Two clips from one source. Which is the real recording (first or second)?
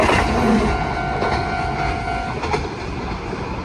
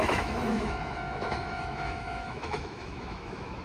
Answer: first